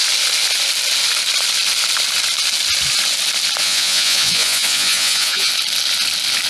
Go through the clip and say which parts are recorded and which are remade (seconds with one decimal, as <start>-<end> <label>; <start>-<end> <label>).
0.0-3.6 recorded; 3.6-5.5 remade; 5.5-6.5 recorded